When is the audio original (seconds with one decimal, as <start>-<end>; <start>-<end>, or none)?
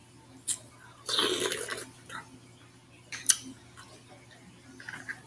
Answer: 0.0-5.3